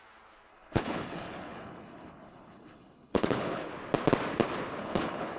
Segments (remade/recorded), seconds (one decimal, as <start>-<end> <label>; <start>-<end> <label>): 0.0-0.5 recorded; 0.5-3.7 remade; 3.7-4.8 recorded; 4.8-5.4 remade